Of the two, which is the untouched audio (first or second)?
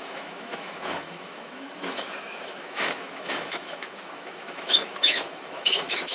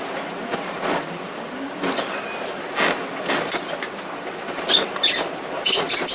second